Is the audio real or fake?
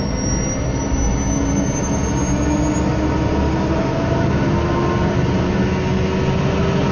real